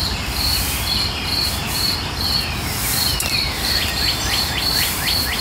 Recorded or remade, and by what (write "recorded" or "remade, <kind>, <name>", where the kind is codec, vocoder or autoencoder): remade, vocoder, BigVGAN v2